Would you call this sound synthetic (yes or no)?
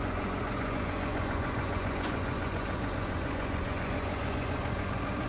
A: yes